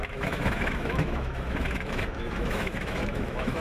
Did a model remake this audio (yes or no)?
yes